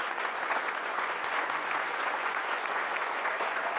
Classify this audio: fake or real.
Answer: fake